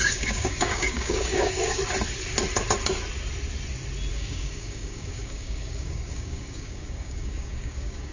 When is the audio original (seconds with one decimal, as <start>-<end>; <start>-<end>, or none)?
1.8-4.1